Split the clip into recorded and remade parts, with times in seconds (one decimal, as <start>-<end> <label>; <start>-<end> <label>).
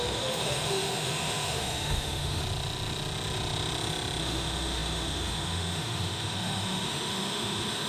0.0-2.4 remade; 2.4-4.2 recorded; 4.2-7.9 remade